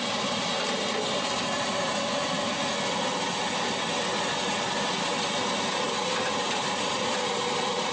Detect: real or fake real